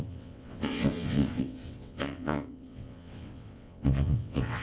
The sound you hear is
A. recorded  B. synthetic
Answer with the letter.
B